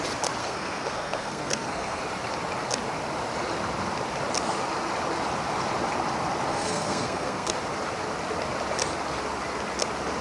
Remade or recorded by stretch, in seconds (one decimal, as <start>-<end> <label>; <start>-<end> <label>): 0.0-0.4 recorded; 0.4-2.0 remade; 2.0-6.5 recorded; 6.5-7.5 remade; 7.5-10.2 recorded